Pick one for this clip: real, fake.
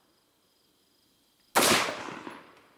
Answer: real